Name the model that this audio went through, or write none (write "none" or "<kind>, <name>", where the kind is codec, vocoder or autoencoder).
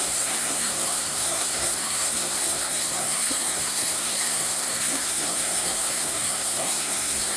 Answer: codec, SNAC